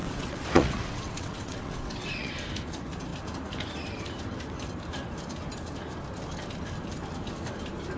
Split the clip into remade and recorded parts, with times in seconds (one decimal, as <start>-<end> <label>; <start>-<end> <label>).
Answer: 0.0-2.3 remade; 2.3-8.0 recorded